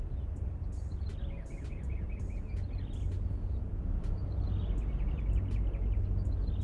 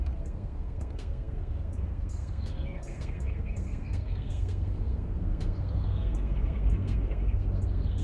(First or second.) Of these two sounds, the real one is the first